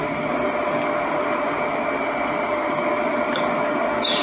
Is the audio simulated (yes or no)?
no